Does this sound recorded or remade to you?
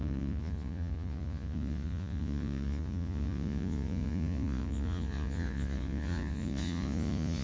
remade